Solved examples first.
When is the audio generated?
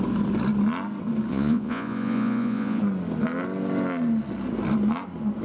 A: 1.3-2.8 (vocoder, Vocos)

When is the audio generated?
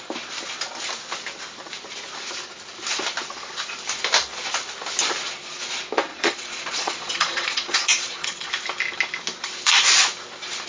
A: 6.1-8.5 (vocoder, Vocos)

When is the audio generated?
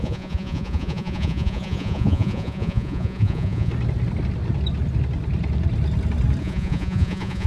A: 0.0-3.7 (vocoder, Vocos); 6.4-7.5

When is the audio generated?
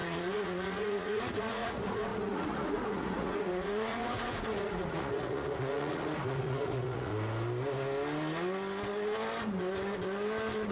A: 0.0-7.1 (vocoder, Vocos)